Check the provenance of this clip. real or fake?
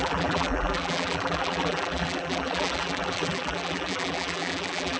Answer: fake